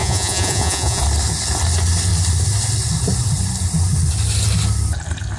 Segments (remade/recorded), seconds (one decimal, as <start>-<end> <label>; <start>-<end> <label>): 0.0-1.0 remade; 1.0-5.4 recorded